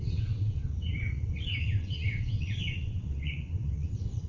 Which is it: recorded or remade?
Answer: remade